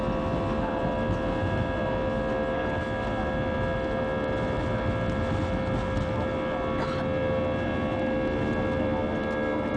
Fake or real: real